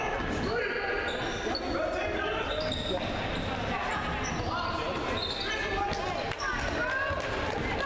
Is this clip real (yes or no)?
yes